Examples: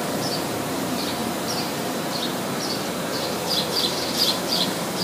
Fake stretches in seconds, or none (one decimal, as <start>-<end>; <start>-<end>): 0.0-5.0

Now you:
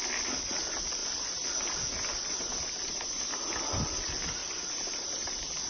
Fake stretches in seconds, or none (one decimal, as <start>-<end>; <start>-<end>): 4.4-5.7

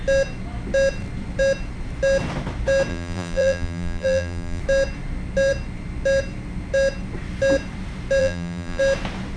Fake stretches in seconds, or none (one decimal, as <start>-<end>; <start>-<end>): 2.9-4.6; 8.2-8.8

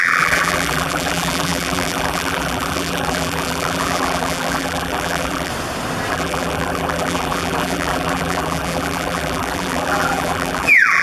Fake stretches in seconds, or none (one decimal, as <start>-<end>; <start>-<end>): 0.0-5.5; 6.1-11.0

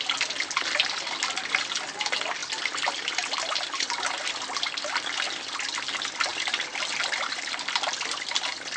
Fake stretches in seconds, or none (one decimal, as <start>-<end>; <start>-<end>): none